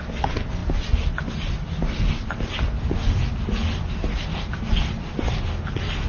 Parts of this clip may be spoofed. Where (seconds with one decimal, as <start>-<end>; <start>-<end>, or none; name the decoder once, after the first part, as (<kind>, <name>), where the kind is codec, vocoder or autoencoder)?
none